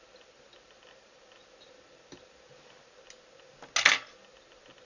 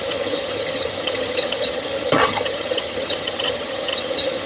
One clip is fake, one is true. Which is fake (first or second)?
second